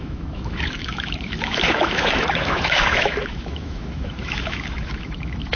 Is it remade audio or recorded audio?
remade